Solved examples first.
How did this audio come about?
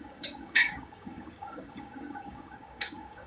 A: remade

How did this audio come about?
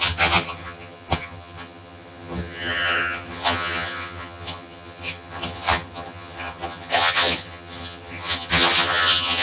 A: remade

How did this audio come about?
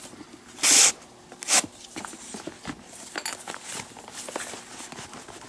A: recorded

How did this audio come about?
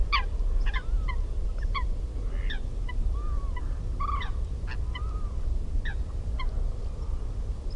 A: recorded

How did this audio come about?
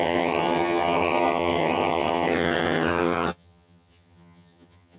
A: remade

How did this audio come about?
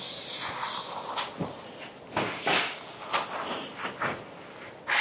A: recorded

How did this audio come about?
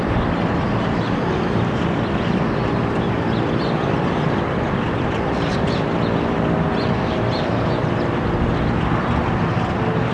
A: recorded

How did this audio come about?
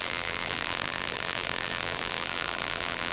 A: remade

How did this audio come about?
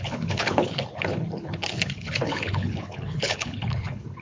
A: remade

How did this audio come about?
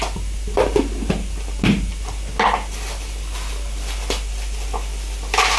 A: recorded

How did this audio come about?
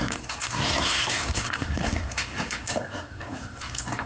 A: remade